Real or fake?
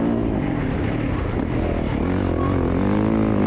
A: real